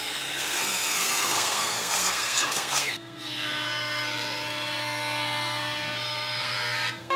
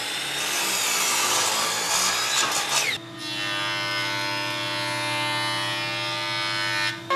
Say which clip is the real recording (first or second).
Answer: second